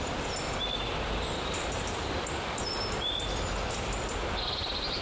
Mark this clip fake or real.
fake